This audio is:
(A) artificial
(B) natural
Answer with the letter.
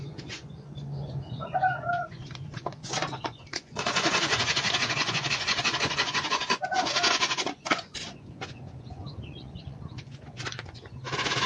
A